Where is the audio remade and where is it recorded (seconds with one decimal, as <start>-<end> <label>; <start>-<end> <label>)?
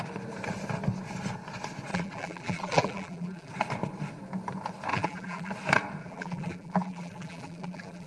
0.0-1.9 recorded; 1.9-3.5 remade; 3.5-4.9 recorded; 4.9-5.5 remade; 5.5-6.0 recorded; 6.0-8.1 remade